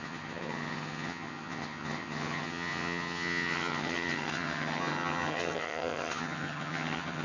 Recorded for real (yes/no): no